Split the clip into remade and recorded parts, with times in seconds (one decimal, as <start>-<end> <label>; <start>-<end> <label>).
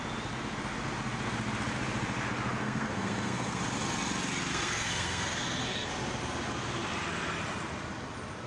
0.0-2.6 recorded; 2.6-3.6 remade; 3.6-4.5 recorded; 4.5-5.9 remade; 5.9-8.5 recorded